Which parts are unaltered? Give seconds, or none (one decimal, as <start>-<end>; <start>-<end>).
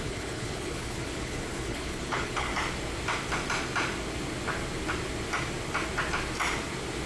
2.5-7.1